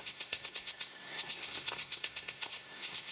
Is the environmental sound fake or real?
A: fake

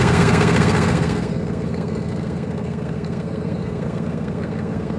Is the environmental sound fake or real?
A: fake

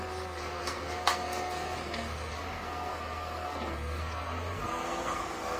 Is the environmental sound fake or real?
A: fake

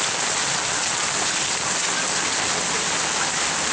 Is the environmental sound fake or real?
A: real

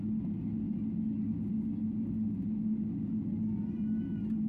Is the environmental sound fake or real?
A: real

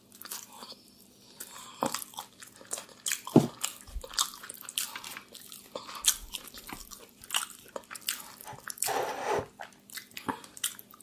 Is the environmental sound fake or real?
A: real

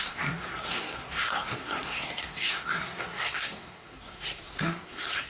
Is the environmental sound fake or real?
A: fake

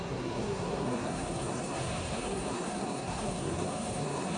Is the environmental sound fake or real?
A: fake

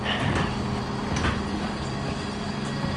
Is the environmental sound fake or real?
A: real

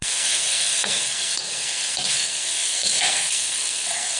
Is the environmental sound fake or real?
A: fake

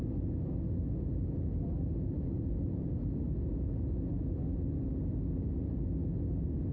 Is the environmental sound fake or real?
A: real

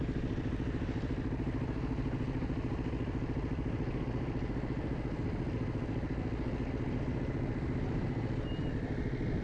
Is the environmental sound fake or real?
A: real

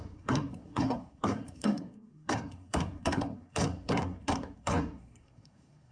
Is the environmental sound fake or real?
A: fake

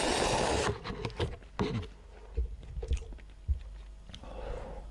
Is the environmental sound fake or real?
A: real